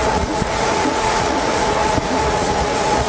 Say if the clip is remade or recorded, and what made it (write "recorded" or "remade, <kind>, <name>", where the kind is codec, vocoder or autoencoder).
remade, vocoder, Vocos